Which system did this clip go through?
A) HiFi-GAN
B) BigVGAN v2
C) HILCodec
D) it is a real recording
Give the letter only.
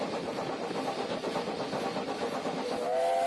D